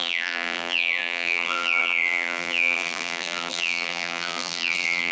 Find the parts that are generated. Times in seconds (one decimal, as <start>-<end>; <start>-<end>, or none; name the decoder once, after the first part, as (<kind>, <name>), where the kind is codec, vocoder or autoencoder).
0.0-5.1 (vocoder, BigVGAN v2)